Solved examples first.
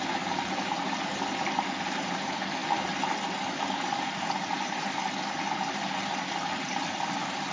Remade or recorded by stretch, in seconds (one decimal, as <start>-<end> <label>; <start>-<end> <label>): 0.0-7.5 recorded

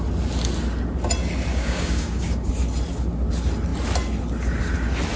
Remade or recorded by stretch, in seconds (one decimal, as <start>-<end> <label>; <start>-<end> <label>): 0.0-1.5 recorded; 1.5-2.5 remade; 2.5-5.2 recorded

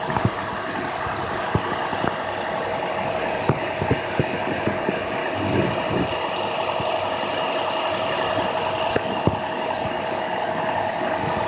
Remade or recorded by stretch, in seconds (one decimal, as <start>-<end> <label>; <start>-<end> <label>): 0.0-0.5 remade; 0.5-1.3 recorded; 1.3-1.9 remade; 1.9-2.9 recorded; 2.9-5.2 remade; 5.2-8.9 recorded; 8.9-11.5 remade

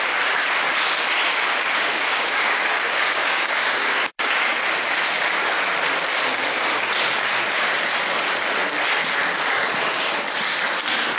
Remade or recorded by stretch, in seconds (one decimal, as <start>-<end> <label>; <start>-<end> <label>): 0.0-1.5 recorded; 1.5-4.6 remade; 4.6-11.2 recorded

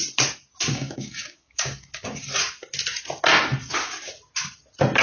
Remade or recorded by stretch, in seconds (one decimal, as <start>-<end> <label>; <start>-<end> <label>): 0.0-0.7 recorded; 0.7-2.2 remade; 2.2-5.0 recorded